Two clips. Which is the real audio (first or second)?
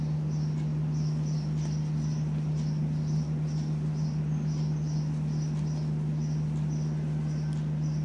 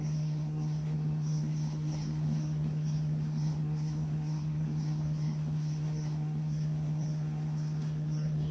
first